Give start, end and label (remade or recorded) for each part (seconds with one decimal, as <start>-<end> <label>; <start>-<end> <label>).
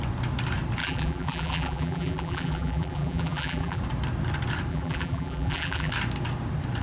0.0-0.8 recorded; 0.8-3.8 remade; 3.8-4.7 recorded; 4.7-5.9 remade; 5.9-6.8 recorded